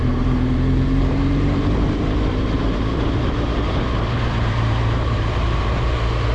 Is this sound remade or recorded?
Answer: remade